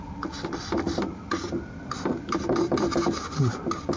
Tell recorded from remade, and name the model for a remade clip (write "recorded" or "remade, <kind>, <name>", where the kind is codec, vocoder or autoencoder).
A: recorded